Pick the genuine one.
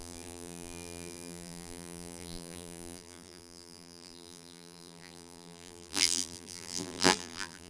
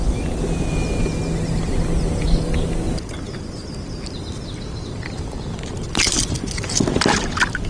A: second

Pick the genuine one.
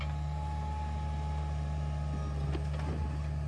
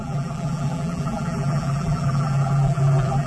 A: first